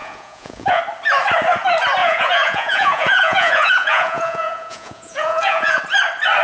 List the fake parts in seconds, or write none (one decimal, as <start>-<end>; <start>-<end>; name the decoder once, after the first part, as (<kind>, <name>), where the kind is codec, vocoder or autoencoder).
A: 0.0-0.8 (vocoder, Vocos); 2.0-5.8